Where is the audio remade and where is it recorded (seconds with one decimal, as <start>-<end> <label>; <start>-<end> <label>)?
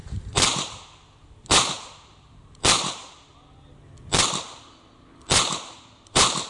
0.0-3.3 remade; 3.3-5.7 recorded; 5.7-6.5 remade